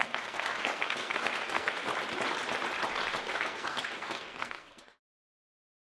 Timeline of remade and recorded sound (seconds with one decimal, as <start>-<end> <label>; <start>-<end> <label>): 0.0-1.9 remade; 1.9-3.3 recorded; 3.3-6.0 remade